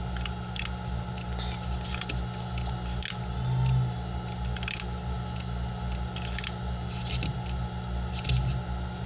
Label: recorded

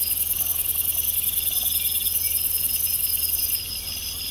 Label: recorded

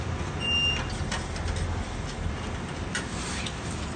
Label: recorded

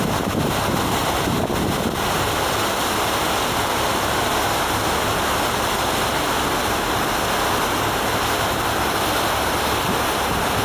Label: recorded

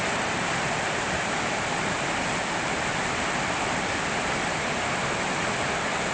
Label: remade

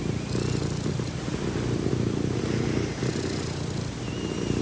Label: recorded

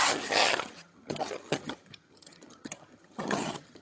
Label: remade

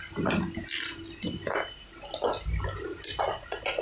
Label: recorded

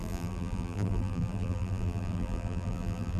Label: remade